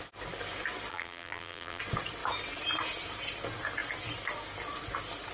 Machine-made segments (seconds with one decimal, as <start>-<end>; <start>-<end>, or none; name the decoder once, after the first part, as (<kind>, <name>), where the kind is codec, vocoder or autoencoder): 0.9-1.8 (vocoder, BigVGAN v2)